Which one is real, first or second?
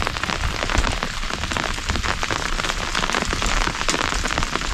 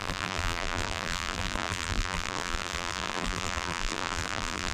first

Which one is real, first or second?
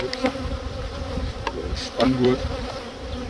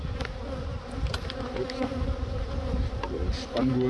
second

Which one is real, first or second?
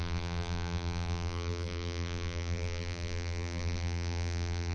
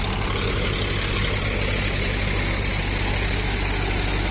second